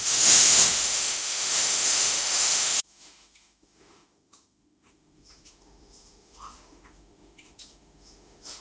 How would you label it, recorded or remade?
remade